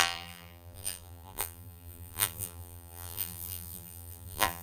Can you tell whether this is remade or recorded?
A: remade